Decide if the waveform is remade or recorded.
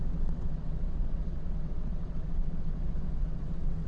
remade